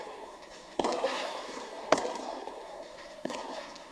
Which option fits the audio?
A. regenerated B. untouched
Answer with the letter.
A